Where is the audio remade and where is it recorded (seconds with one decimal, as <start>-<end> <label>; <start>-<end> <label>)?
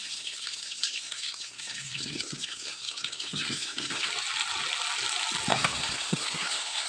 0.0-4.1 remade; 4.1-5.5 recorded; 5.5-6.9 remade